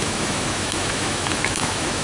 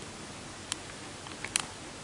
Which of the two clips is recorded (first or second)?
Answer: second